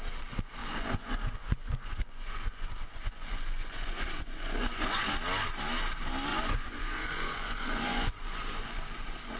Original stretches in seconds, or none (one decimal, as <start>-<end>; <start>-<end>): 0.0-0.6; 5.1-6.3